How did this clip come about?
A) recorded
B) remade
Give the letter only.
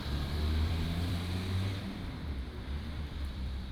B